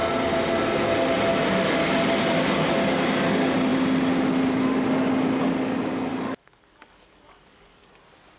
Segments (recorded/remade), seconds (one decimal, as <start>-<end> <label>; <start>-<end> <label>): 0.0-6.1 recorded; 6.1-7.9 remade; 7.9-8.4 recorded